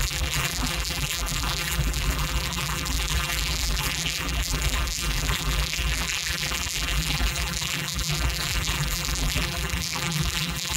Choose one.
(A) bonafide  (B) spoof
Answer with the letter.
B